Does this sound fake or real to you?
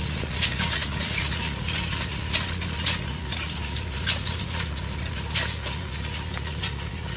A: fake